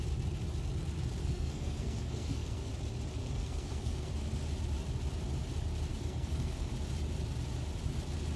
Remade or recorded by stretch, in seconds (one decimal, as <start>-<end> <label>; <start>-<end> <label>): 0.0-1.2 recorded; 1.2-2.7 remade; 2.7-3.2 recorded; 3.2-4.1 remade; 4.1-5.9 recorded; 5.9-6.7 remade; 6.7-8.4 recorded